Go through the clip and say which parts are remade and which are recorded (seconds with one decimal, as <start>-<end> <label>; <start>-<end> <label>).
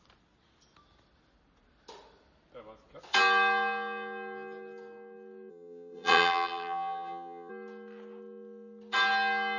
0.0-5.5 recorded; 5.5-7.5 remade; 7.5-9.6 recorded